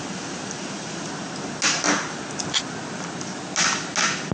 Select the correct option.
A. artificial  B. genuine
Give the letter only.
B